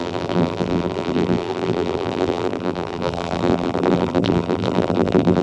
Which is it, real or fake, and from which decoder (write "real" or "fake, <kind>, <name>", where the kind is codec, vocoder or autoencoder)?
fake, vocoder, BigVGAN v2